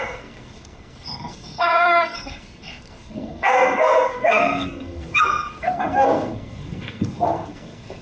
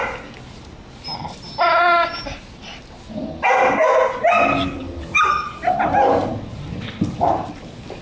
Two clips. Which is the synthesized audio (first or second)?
first